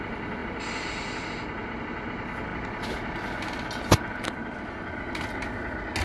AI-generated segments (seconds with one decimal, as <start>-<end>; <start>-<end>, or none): none